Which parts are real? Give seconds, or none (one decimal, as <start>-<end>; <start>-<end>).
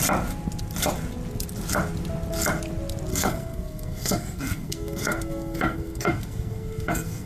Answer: 0.0-3.1